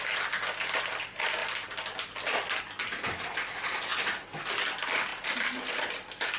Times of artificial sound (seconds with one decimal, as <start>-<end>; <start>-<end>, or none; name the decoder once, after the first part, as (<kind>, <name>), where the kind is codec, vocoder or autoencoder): 1.4-2.6 (vocoder, BigVGAN v2); 5.1-6.4